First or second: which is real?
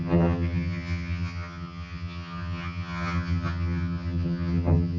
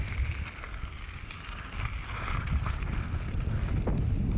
second